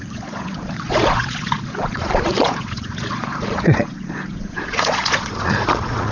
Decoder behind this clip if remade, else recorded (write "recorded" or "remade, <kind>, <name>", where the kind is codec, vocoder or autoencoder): remade, vocoder, Vocos